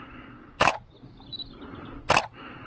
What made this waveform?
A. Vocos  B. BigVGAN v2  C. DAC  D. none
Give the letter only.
D